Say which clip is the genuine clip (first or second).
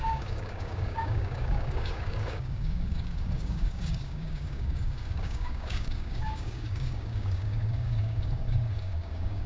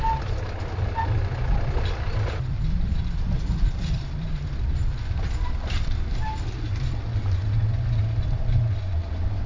second